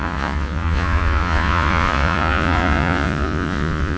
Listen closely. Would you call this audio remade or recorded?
remade